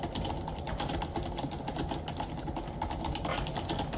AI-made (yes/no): no